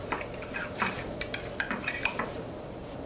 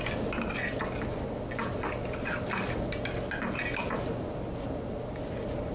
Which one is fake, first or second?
first